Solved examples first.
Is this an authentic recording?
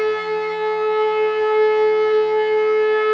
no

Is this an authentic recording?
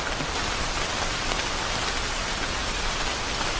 yes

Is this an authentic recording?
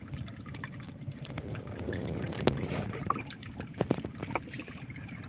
no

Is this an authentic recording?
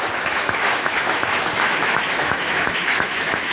no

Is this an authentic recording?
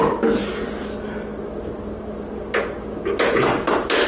yes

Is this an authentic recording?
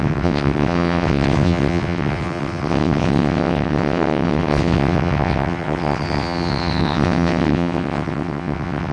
no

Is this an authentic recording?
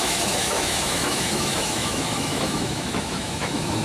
no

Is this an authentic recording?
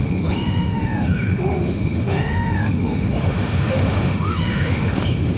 no